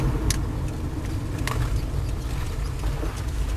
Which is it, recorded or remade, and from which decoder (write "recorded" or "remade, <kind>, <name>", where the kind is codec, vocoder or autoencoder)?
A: recorded